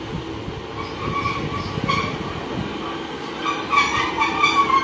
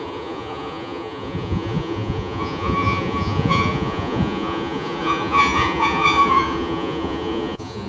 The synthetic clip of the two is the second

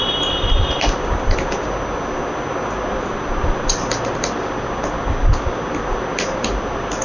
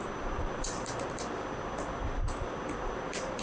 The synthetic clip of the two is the second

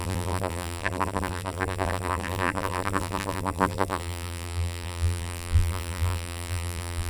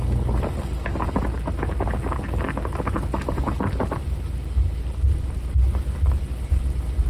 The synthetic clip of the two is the first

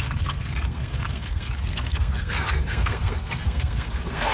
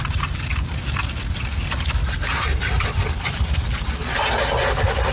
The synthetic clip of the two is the first